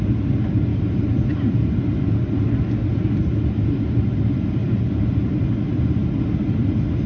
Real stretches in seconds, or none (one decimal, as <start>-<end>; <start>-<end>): 0.0-7.1